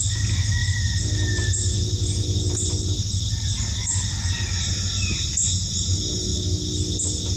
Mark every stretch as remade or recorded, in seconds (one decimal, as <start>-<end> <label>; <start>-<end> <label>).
0.0-7.4 recorded